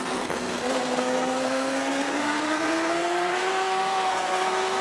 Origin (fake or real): fake